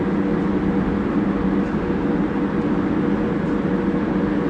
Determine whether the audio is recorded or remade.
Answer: recorded